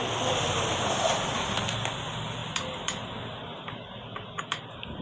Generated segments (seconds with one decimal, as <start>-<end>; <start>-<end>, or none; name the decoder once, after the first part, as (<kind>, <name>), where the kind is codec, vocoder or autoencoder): none